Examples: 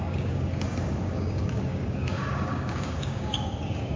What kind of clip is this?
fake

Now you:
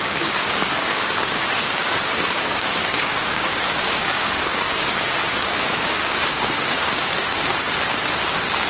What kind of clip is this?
fake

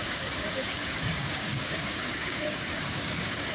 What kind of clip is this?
fake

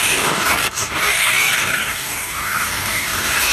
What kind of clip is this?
fake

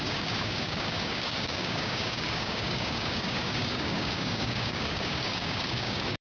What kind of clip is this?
fake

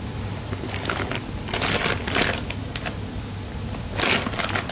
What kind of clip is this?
real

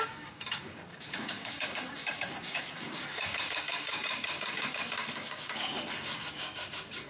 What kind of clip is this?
fake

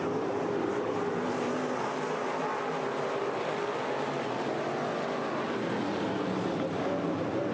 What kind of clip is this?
real